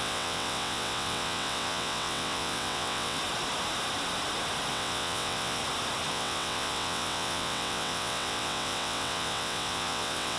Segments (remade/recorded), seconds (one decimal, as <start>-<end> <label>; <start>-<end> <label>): 0.0-3.2 remade; 3.2-4.7 recorded; 4.7-5.6 remade; 5.6-6.1 recorded; 6.1-10.4 remade